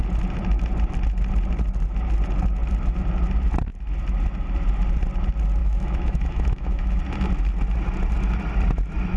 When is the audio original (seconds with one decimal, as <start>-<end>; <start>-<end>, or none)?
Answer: 0.0-5.6; 7.0-9.2